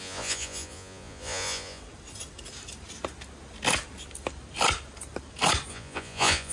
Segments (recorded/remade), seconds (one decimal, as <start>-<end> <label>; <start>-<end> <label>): 0.0-1.8 remade; 1.8-5.7 recorded; 5.7-6.5 remade